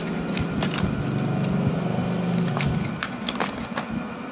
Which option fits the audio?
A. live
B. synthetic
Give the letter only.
A